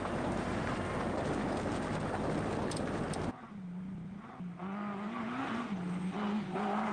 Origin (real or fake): real